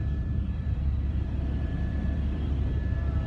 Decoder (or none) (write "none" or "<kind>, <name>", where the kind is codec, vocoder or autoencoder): vocoder, BigVGAN v2